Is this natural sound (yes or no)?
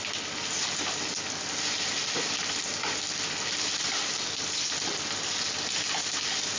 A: yes